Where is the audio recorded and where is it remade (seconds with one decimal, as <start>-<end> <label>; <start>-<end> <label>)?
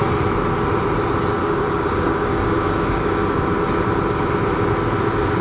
0.0-1.4 recorded; 1.4-3.4 remade; 3.4-5.4 recorded